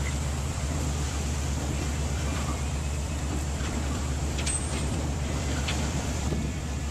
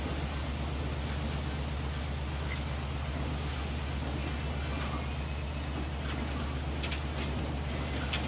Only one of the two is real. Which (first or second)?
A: second